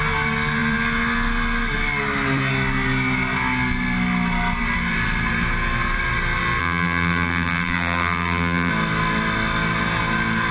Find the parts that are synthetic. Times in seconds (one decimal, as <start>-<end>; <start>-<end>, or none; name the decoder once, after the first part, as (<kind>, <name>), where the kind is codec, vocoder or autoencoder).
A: 6.6-8.7 (vocoder, BigVGAN v2)